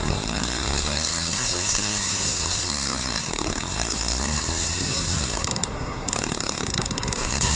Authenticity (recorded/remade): remade